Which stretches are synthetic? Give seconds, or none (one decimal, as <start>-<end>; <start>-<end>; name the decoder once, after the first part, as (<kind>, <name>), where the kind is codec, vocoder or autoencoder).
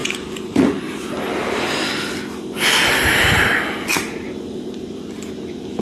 0.0-0.6 (vocoder, BigVGAN v2); 3.9-5.8